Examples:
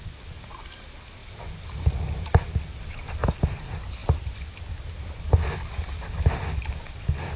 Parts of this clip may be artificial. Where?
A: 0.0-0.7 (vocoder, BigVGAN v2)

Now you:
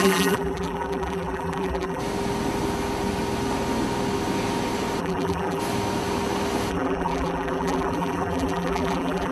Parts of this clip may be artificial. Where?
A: 0.0-2.0 (vocoder, BigVGAN v2); 5.0-5.6; 6.7-9.3

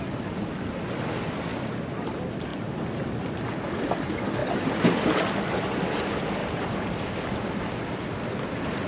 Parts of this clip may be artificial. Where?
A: 6.4-7.7 (vocoder, BigVGAN v2)